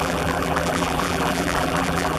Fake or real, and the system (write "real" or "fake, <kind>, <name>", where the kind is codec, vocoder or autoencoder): fake, vocoder, BigVGAN v2